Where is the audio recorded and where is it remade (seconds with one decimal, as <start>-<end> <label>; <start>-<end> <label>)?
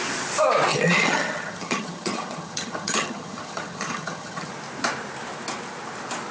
0.0-0.7 recorded; 0.7-4.5 remade; 4.5-6.3 recorded